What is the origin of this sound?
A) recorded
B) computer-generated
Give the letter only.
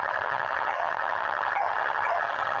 B